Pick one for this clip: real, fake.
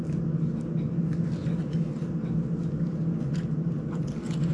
real